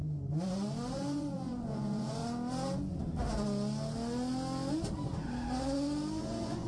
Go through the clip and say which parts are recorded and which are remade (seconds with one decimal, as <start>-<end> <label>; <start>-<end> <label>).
0.0-0.9 recorded; 0.9-2.2 remade; 2.2-6.2 recorded; 6.2-6.7 remade